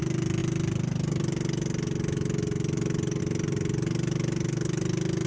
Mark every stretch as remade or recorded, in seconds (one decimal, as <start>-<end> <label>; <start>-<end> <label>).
0.0-5.3 recorded